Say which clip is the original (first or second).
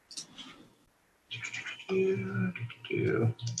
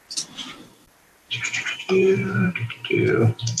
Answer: first